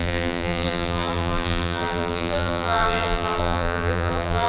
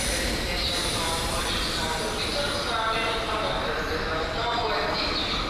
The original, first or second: second